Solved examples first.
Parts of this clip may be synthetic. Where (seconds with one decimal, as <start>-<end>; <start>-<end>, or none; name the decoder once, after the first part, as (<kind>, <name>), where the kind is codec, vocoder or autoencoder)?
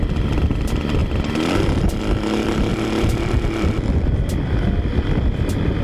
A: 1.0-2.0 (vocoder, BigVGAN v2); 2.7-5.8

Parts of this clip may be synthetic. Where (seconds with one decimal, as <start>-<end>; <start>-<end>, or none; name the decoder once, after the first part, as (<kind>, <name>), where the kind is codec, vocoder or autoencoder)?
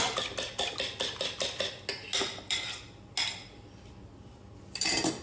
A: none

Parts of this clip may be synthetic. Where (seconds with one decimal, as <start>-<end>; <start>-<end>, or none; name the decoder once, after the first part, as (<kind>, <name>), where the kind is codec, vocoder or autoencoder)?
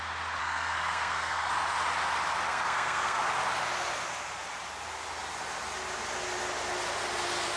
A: 0.4-1.5 (codec, SNAC); 2.5-3.2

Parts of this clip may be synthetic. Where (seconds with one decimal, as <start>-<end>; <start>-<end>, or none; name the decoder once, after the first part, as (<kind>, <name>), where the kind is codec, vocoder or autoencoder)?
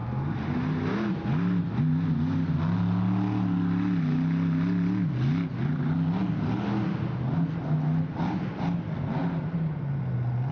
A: none